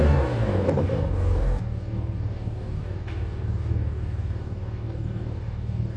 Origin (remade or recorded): remade